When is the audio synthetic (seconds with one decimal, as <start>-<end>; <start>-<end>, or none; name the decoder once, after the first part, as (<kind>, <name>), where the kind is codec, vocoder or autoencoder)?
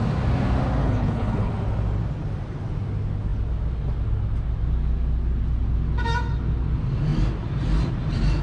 0.8-1.5 (codec, HILCodec)